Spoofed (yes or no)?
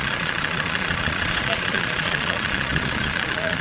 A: yes